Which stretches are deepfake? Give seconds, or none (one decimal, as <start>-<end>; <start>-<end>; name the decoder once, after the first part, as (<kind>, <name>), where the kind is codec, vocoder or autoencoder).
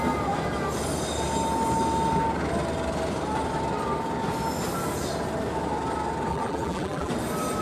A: 6.3-7.1 (vocoder, BigVGAN v2)